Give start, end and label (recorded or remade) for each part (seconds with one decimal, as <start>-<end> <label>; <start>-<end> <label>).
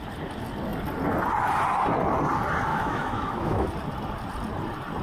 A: 0.0-2.7 recorded; 2.7-3.7 remade; 3.7-5.0 recorded